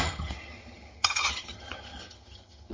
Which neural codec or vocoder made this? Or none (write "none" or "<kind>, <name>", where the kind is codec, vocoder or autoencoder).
vocoder, HiFi-GAN